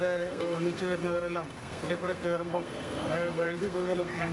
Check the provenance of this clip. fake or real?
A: fake